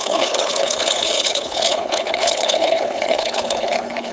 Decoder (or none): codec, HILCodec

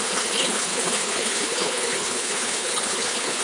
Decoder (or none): codec, HILCodec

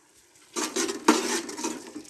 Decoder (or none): none